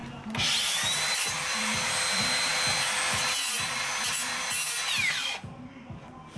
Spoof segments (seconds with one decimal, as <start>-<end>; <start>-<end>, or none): none